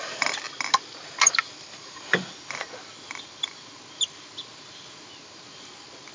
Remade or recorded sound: recorded